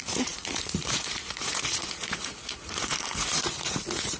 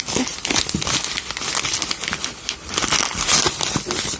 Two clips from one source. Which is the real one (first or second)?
second